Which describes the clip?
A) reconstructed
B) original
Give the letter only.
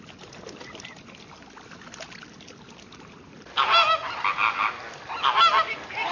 B